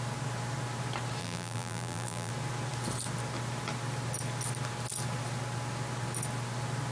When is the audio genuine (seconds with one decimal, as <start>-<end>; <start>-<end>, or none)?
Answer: 0.0-1.2; 2.3-6.9